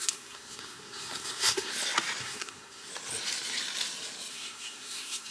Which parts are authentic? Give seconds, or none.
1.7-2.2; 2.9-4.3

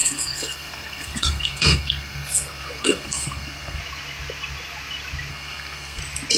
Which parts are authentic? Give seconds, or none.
3.8-5.3; 6.0-6.4

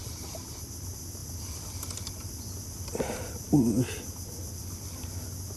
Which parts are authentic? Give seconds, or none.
0.0-5.6

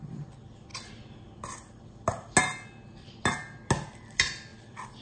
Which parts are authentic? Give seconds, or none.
0.0-5.0

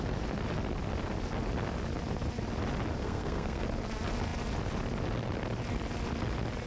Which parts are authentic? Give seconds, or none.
0.0-3.0; 3.6-6.7